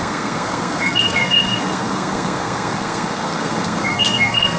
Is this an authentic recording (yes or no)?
no